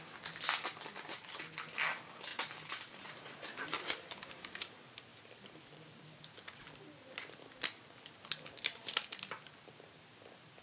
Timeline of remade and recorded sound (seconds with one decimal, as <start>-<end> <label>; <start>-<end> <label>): 0.0-2.3 recorded; 2.3-4.6 remade; 4.6-10.6 recorded